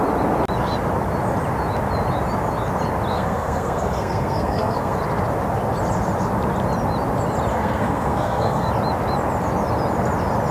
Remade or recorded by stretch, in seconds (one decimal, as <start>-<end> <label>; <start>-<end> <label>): 0.0-3.1 recorded; 3.1-5.0 remade; 5.0-7.5 recorded; 7.5-8.7 remade; 8.7-10.5 recorded